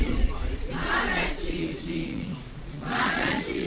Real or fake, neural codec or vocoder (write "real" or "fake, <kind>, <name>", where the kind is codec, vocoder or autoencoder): fake, vocoder, Vocos